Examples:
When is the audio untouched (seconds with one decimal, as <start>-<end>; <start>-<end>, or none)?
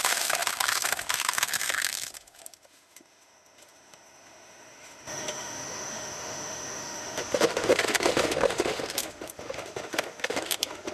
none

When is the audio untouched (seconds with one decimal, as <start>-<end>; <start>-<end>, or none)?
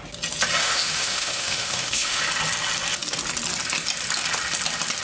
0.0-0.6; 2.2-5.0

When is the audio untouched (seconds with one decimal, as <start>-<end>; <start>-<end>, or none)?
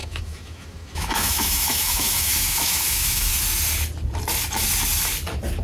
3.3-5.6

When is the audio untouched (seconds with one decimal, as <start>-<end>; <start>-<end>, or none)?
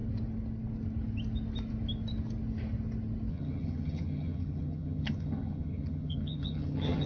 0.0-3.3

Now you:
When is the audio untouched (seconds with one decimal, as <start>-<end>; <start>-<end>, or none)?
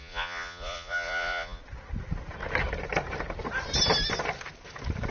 1.6-5.1